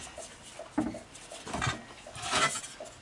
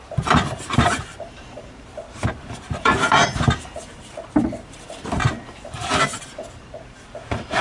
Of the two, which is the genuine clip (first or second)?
first